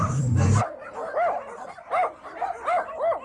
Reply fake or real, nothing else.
real